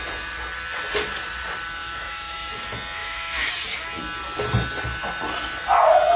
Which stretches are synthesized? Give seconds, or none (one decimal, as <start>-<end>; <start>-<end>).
1.8-2.5; 3.0-3.5

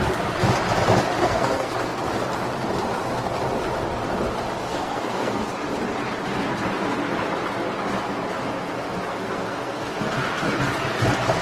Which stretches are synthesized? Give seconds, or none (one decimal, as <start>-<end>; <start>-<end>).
1.2-2.0; 4.7-5.5; 9.1-9.8

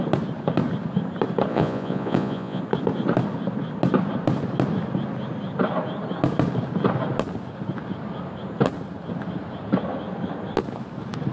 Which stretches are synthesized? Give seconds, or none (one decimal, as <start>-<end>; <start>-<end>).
1.5-2.6

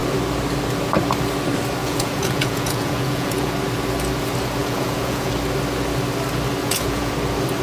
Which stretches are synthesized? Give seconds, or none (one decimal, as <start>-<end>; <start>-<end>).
1.8-3.5; 4.6-5.3; 6.6-7.1

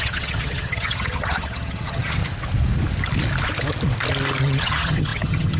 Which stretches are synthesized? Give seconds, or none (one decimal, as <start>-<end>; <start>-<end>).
0.0-2.2; 4.4-5.6